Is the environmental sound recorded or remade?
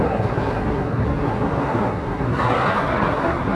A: remade